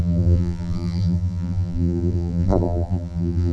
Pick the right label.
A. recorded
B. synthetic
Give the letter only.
B